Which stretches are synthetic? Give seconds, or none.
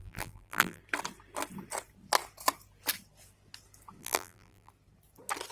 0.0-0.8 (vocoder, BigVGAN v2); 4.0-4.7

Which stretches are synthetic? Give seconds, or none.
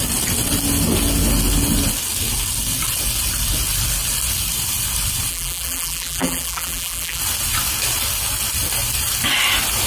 5.3-7.2 (vocoder, BigVGAN v2)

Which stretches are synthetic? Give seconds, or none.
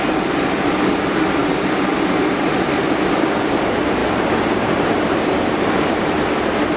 1.4-2.4 (vocoder, BigVGAN v2); 4.0-6.3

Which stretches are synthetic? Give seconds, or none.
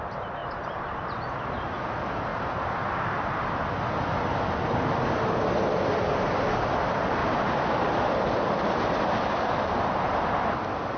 0.4-1.3 (vocoder, BigVGAN v2); 7.2-10.1